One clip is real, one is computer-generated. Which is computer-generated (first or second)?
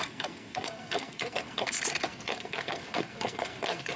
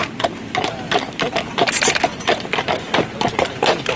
first